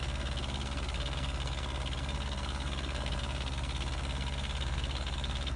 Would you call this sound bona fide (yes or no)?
no